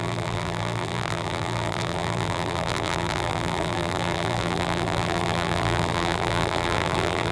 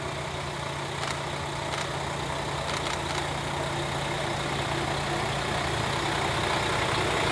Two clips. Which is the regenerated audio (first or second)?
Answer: first